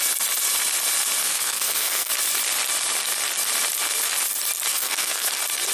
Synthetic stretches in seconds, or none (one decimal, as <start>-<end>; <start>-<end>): 1.2-2.1; 4.7-5.3